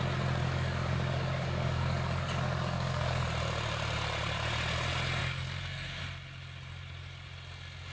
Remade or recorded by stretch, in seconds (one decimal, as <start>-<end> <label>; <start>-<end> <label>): 0.0-0.4 recorded; 0.4-3.2 remade; 3.2-5.2 recorded; 5.2-6.0 remade; 6.0-7.9 recorded